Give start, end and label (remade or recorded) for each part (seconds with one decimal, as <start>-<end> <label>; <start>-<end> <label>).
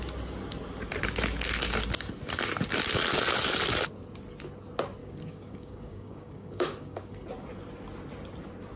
0.0-5.0 recorded; 5.0-7.1 remade; 7.1-8.8 recorded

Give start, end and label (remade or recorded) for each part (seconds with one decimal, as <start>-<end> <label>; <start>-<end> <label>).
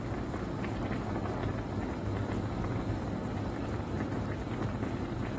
0.0-5.4 recorded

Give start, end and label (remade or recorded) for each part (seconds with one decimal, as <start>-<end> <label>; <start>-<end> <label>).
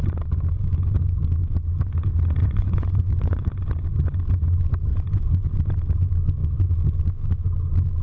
0.0-2.4 recorded; 2.4-3.5 remade; 3.5-4.9 recorded; 4.9-5.5 remade; 5.5-8.0 recorded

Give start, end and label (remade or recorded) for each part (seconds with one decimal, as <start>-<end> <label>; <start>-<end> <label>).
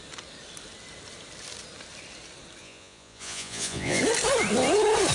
0.0-2.6 recorded; 2.6-4.0 remade; 4.0-5.1 recorded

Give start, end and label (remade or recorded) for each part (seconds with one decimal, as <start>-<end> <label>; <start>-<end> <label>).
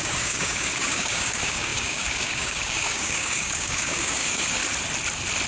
0.0-4.6 remade; 4.6-5.5 recorded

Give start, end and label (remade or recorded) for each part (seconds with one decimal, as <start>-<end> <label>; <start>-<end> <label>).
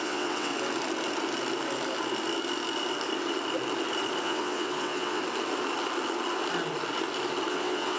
0.0-0.5 remade; 0.5-4.2 recorded; 4.2-5.2 remade; 5.2-7.5 recorded; 7.5-8.0 remade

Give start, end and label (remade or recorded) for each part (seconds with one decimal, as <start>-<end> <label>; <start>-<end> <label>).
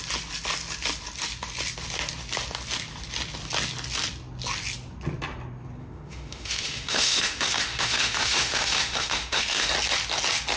0.0-5.8 recorded; 5.8-9.7 remade; 9.7-10.6 recorded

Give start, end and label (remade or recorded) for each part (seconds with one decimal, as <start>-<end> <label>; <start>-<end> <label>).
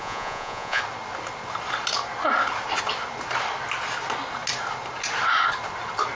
0.0-0.8 remade; 0.8-6.1 recorded